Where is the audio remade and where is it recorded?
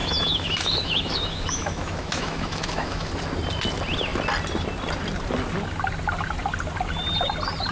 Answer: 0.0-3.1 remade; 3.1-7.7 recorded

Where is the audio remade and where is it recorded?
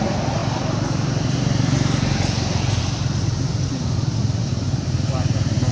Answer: 0.0-0.4 recorded; 0.4-2.8 remade; 2.8-4.4 recorded; 4.4-5.0 remade; 5.0-5.7 recorded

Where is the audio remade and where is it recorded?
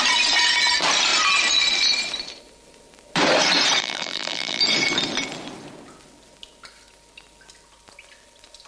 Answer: 0.0-3.8 recorded; 3.8-4.6 remade; 4.6-8.7 recorded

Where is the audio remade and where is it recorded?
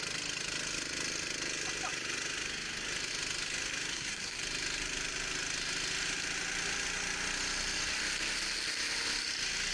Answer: 0.0-3.9 recorded; 3.9-4.4 remade; 4.4-9.7 recorded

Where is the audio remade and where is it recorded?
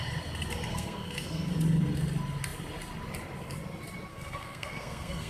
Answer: 0.0-0.7 recorded; 0.7-1.5 remade; 1.5-4.1 recorded; 4.1-5.3 remade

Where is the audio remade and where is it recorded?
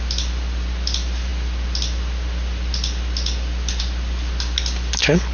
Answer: 0.0-5.3 recorded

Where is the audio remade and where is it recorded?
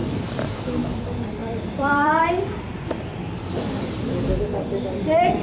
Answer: 0.0-0.6 remade; 0.6-1.4 recorded; 1.4-3.2 remade; 3.2-5.4 recorded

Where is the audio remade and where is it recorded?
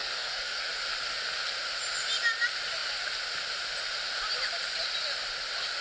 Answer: 0.0-0.7 remade; 0.7-5.8 recorded